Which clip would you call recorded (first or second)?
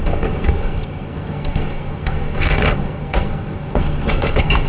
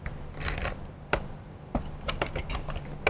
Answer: second